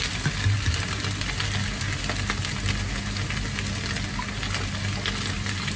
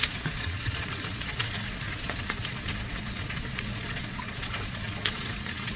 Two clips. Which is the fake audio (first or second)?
second